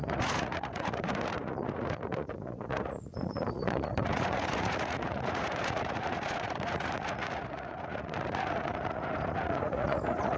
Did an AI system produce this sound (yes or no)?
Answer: yes